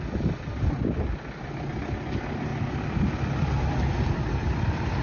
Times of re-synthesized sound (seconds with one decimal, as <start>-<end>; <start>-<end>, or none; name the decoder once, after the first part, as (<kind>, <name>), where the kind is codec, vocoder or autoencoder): none